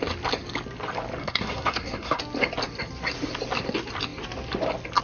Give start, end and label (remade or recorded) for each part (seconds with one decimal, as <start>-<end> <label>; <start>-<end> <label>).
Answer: 0.0-1.2 recorded; 1.2-2.2 remade; 2.2-5.0 recorded